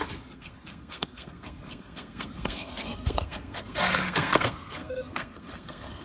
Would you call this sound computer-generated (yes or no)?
yes